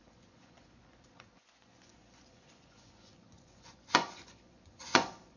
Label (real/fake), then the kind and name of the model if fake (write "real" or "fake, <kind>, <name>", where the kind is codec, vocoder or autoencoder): fake, vocoder, Vocos